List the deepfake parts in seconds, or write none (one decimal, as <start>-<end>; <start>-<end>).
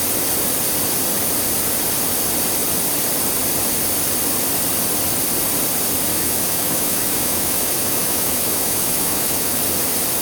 6.1-9.6